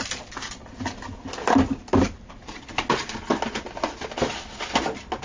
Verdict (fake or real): real